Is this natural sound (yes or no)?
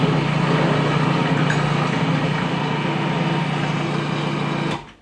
yes